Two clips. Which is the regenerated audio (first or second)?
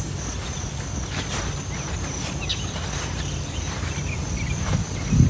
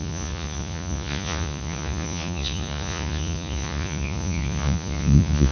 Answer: second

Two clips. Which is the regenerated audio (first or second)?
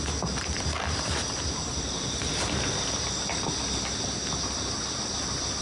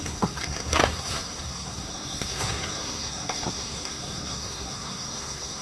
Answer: second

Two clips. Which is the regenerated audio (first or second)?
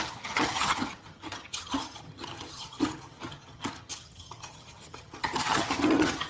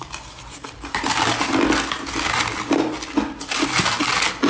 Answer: first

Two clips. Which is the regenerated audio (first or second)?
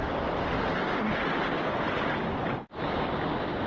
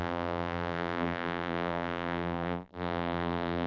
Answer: second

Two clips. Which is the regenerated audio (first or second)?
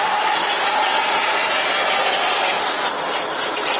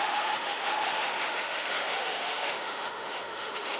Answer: second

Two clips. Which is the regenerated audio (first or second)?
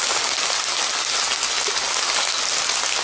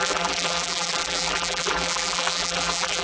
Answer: second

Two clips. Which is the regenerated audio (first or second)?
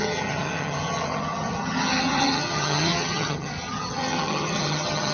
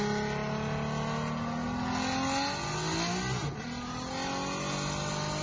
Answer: first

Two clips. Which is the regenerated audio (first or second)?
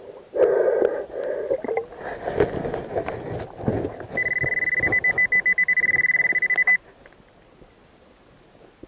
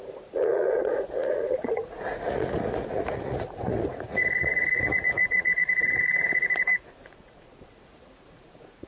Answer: second